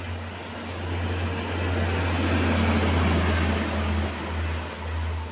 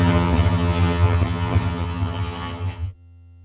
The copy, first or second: second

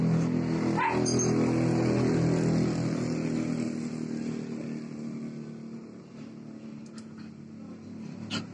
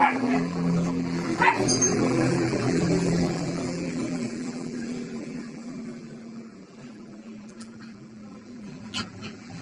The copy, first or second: second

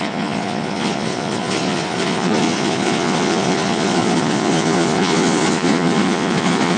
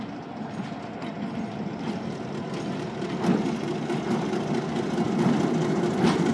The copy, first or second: first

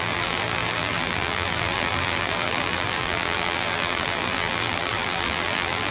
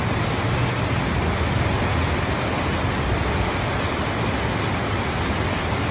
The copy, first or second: first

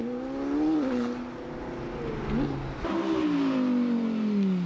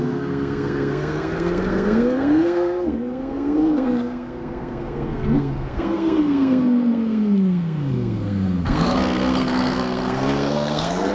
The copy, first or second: second